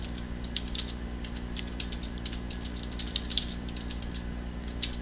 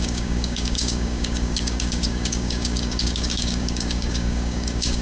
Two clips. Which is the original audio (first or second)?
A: first